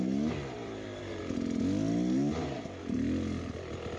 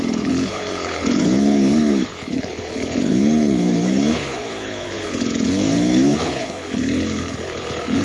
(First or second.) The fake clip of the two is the second